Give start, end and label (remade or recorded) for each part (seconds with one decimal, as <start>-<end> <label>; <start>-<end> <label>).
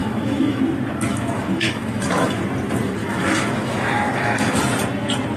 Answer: 0.0-0.6 remade; 0.6-1.1 recorded; 1.1-2.4 remade; 2.4-3.0 recorded; 3.0-4.6 remade; 4.6-5.4 recorded